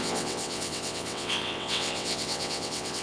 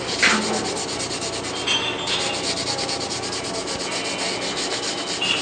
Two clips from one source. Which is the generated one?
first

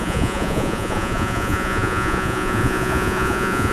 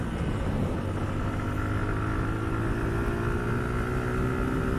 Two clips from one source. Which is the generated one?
first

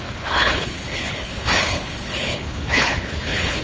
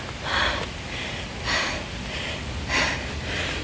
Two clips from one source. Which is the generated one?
first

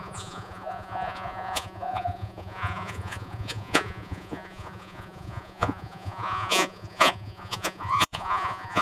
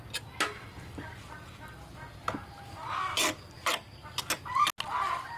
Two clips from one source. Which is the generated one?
first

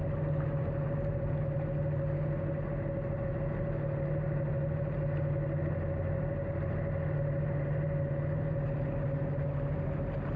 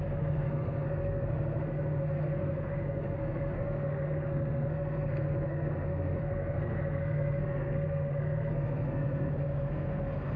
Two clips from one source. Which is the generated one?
second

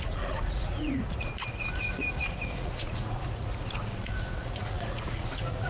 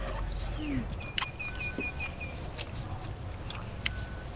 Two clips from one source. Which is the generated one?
first